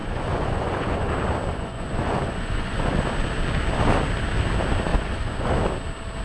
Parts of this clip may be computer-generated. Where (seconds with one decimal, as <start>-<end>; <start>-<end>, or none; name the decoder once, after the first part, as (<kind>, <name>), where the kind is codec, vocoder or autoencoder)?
0.0-1.1 (vocoder, Vocos); 1.5-3.0; 4.9-5.5